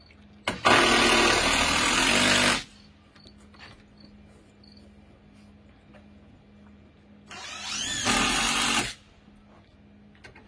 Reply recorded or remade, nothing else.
recorded